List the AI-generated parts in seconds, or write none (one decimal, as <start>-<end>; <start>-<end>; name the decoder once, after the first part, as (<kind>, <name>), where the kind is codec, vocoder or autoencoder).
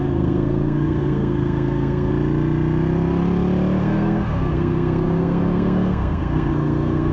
0.0-2.1 (codec, SNAC); 3.8-7.1